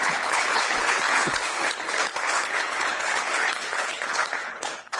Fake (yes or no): yes